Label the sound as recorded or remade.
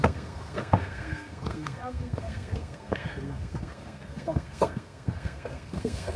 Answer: remade